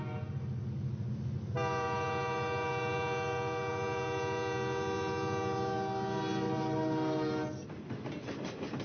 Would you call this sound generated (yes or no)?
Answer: no